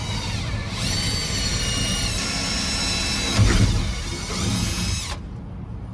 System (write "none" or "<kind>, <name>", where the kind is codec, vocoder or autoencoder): none